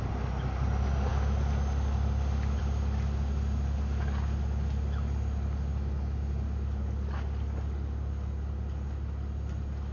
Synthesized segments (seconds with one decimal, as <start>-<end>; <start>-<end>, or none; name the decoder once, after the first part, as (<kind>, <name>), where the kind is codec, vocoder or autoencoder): none